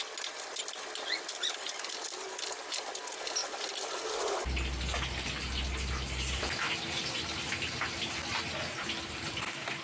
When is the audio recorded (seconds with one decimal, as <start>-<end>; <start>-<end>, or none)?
0.0-9.8